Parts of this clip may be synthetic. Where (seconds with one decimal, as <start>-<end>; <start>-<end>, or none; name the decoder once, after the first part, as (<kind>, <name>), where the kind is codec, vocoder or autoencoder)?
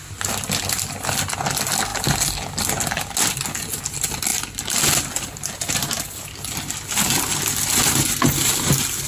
none